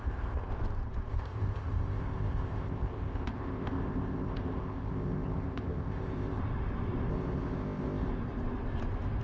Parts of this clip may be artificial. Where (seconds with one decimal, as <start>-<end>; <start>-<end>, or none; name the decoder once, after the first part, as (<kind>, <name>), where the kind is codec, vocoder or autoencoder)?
0.0-0.5 (codec, ZipCodec); 1.1-6.4; 7.1-8.1